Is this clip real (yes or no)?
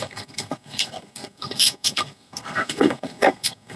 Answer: no